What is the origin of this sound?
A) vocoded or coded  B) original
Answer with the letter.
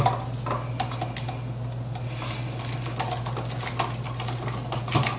B